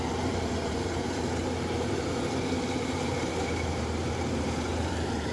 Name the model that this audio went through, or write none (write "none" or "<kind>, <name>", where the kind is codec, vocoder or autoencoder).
vocoder, BigVGAN v2